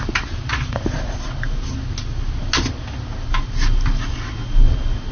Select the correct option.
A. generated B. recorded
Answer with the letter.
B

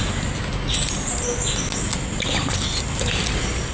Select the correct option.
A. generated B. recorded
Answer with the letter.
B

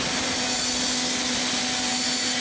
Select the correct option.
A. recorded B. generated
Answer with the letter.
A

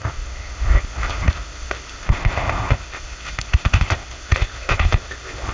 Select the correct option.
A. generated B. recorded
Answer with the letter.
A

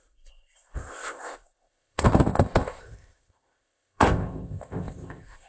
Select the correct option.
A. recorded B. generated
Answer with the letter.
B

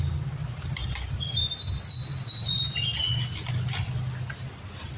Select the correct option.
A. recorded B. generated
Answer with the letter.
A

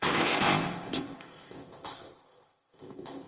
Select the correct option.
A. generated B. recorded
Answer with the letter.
A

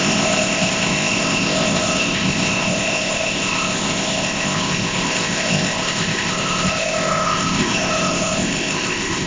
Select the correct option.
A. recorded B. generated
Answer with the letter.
B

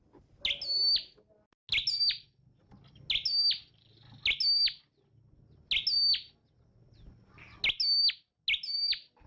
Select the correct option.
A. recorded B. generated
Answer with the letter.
A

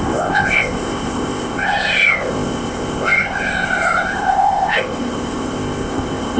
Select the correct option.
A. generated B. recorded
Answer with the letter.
A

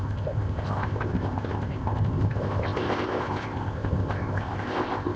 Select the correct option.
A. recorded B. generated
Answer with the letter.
B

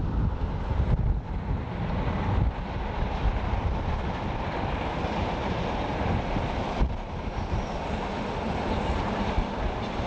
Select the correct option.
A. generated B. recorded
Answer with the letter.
B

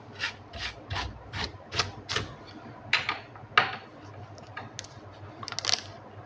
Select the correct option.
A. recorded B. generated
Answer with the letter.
A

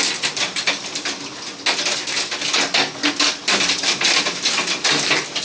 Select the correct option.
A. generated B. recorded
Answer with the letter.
B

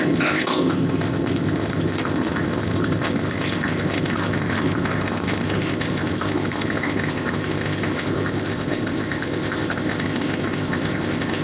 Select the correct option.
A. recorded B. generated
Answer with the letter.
B